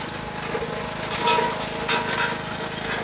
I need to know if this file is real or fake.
real